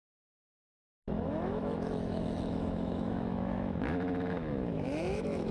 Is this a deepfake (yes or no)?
yes